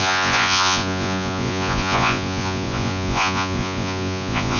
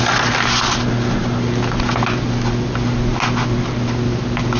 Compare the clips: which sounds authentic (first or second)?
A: second